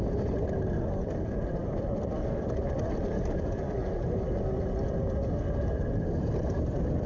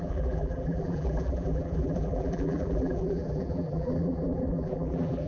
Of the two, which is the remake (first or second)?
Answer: second